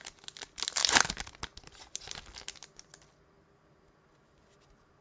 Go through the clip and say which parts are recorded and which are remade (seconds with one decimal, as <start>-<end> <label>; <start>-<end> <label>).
0.0-5.0 recorded